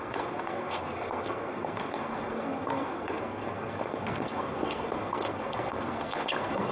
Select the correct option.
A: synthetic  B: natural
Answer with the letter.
A